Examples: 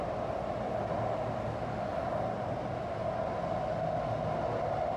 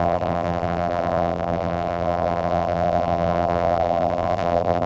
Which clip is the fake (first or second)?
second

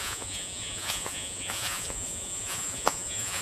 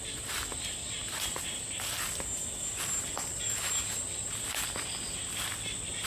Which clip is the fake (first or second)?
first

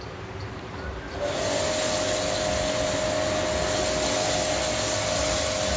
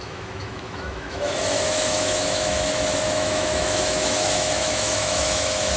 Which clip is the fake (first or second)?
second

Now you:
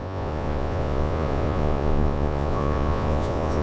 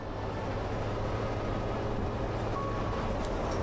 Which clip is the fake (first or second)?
first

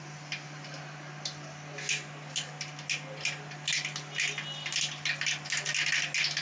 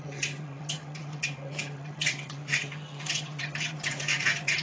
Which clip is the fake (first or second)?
second